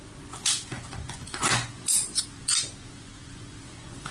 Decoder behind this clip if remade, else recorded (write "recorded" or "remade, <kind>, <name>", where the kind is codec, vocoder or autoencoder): remade, vocoder, Vocos